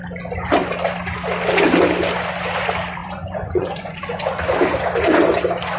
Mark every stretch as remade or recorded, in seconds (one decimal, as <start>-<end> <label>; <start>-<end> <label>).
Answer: 0.0-3.0 recorded; 3.0-4.4 remade; 4.4-5.8 recorded